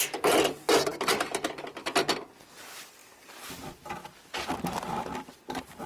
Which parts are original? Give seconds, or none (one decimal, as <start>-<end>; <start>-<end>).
0.0-5.9